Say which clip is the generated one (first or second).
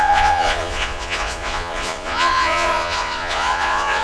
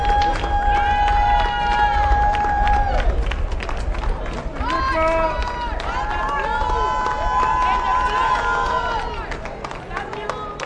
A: first